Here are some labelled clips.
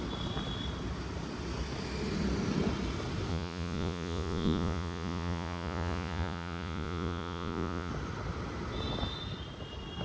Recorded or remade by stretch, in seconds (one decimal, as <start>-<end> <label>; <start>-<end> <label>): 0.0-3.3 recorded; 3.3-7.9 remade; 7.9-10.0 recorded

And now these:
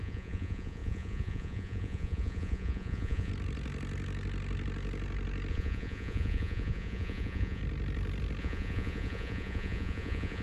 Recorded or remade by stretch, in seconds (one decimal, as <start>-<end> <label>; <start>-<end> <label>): 0.0-3.3 remade; 3.3-5.5 recorded; 5.5-7.6 remade; 7.6-8.4 recorded; 8.4-10.4 remade

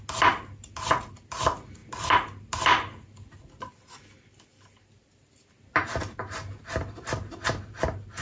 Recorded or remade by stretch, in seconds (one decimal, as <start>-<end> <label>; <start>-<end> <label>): 0.0-8.2 recorded